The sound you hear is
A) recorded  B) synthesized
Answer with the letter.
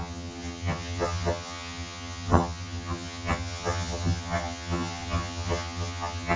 B